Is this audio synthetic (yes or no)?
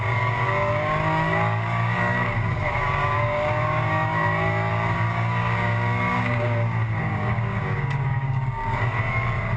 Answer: yes